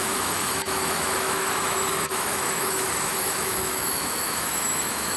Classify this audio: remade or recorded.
remade